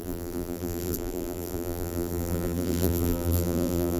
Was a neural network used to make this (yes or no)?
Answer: yes